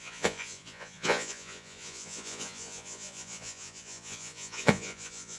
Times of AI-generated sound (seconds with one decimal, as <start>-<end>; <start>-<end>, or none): 0.0-5.4